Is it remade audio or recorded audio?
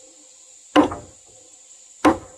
recorded